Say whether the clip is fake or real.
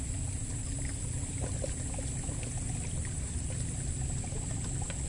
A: fake